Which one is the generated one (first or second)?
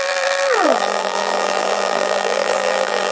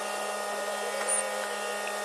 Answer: first